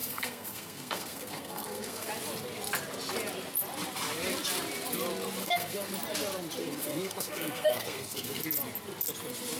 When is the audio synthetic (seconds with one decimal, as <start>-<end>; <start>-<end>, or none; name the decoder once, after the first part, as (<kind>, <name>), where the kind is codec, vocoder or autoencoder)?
0.0-2.1 (codec, SNAC); 5.4-5.9; 6.6-8.4